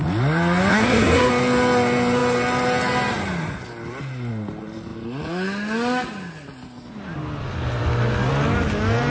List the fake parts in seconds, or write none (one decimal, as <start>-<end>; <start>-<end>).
0.7-1.3